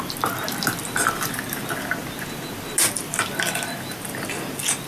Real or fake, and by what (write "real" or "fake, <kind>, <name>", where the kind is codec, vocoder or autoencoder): real